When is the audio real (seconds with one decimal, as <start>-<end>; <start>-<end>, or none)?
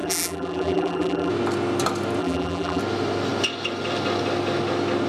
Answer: 1.3-2.2; 2.8-5.1